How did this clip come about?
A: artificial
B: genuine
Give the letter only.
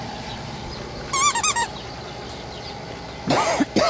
B